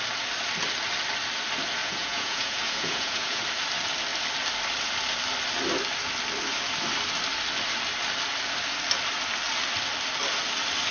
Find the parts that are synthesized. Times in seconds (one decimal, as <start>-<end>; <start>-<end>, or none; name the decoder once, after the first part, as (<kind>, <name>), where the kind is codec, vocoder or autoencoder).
1.8-3.4 (vocoder, Vocos)